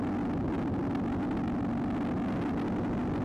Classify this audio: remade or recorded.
recorded